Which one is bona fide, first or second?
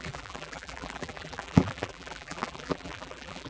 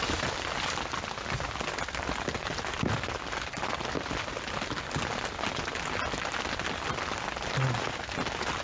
second